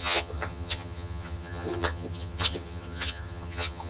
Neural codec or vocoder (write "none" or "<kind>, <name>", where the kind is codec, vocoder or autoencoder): vocoder, HiFi-GAN